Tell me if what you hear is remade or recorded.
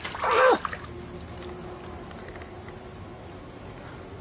recorded